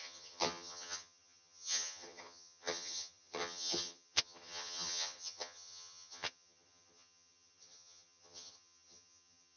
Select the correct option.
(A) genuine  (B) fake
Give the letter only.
B